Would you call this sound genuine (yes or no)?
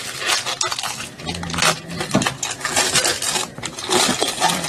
yes